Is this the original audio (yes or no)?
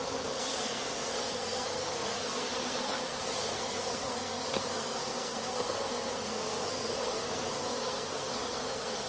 no